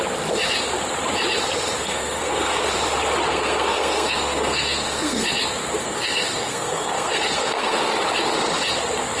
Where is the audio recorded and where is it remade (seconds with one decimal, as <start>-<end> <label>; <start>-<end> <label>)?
0.0-1.8 recorded; 1.8-2.7 remade; 2.7-3.3 recorded; 3.3-5.3 remade; 5.3-5.8 recorded; 5.8-7.9 remade; 7.9-9.2 recorded